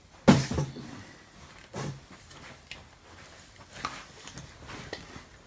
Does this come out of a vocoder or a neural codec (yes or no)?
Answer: no